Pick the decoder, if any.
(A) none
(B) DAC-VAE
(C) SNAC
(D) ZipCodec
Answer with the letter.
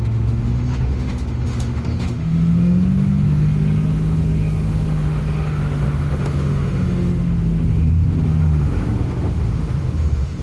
B